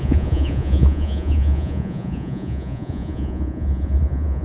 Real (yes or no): no